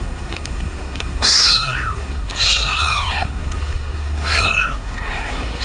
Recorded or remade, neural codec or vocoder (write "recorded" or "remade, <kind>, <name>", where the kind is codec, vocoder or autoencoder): remade, codec, SNAC